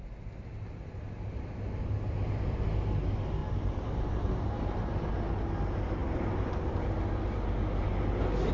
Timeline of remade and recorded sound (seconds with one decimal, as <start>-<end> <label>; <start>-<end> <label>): 0.0-3.4 recorded; 3.4-4.8 remade; 4.8-8.5 recorded